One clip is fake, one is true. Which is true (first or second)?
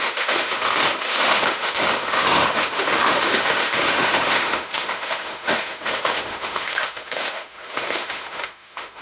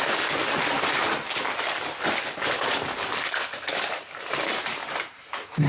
second